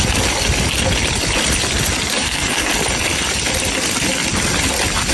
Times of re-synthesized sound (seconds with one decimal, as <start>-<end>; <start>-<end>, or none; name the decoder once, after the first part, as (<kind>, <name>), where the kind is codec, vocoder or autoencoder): 2.2-2.7 (codec, SNAC)